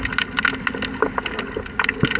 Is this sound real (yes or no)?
yes